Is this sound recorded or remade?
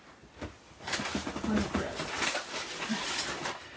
recorded